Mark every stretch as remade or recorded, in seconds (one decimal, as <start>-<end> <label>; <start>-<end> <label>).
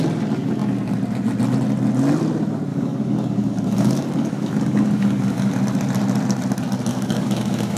0.0-2.7 recorded; 2.7-5.5 remade; 5.5-6.9 recorded; 6.9-7.8 remade